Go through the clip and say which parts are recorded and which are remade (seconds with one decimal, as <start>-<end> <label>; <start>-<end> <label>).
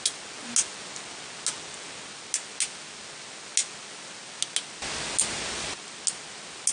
0.0-6.7 recorded